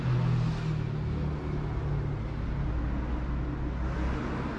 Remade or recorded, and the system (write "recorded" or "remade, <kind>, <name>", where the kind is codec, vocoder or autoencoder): recorded